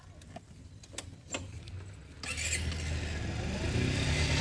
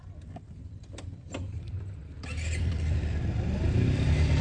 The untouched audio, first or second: first